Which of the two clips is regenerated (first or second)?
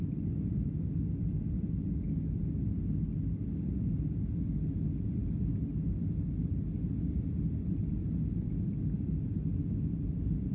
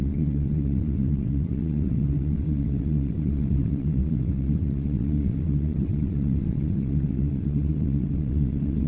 second